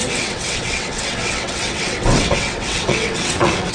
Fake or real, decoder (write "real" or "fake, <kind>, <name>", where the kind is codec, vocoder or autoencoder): fake, vocoder, WaveNeXt